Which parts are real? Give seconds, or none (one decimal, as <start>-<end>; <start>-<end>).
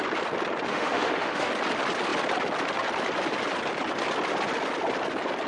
0.0-0.7; 1.5-5.5